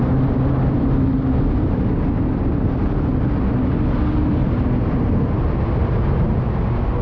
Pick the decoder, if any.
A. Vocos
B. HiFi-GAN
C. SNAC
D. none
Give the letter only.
D